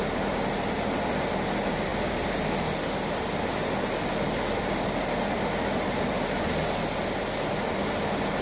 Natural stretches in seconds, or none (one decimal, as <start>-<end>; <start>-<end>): 0.0-8.4